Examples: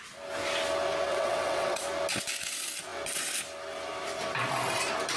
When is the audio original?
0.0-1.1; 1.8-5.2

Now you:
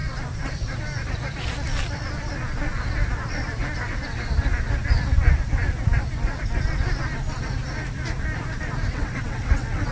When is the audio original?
0.0-8.9

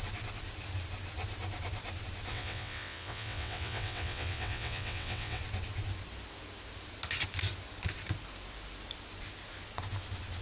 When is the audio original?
0.0-2.3; 5.4-10.4

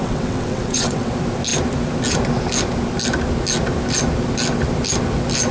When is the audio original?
1.1-5.5

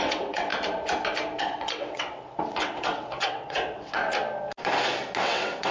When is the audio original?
0.5-1.4; 4.0-5.2

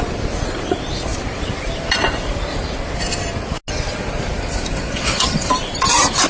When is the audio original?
0.0-4.7; 5.5-6.3